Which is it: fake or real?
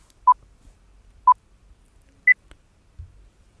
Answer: real